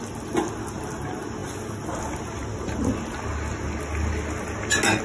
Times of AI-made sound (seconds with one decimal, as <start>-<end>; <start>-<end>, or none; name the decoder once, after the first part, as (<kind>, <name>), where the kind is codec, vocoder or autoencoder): none